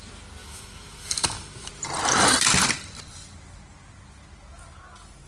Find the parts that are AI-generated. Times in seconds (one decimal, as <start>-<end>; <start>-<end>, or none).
0.4-1.7